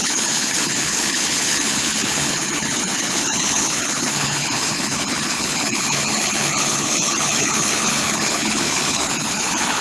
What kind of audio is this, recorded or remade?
remade